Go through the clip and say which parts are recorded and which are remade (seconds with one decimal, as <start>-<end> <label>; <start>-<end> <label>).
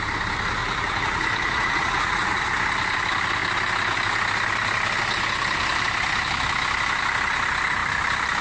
0.0-0.6 recorded; 0.6-2.4 remade; 2.4-8.4 recorded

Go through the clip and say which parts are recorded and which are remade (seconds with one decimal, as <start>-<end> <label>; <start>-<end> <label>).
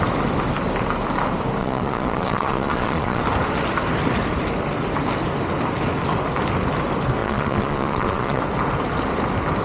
0.0-1.6 recorded; 1.6-3.2 remade; 3.2-7.2 recorded; 7.2-8.4 remade; 8.4-9.6 recorded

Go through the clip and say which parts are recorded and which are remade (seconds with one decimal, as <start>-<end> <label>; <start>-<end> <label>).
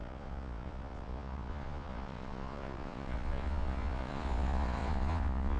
0.0-5.6 remade